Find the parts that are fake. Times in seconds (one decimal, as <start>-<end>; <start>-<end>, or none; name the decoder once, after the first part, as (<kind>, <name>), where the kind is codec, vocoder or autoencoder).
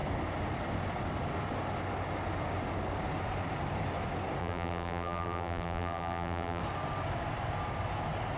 4.4-6.6 (vocoder, BigVGAN v2)